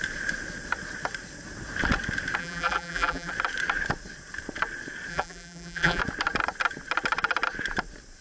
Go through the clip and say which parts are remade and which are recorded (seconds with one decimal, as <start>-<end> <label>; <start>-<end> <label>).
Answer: 0.0-2.4 recorded; 2.4-3.3 remade; 3.3-5.1 recorded; 5.1-6.0 remade; 6.0-8.2 recorded